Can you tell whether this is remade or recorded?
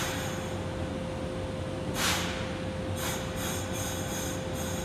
recorded